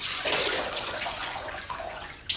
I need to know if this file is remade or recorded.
remade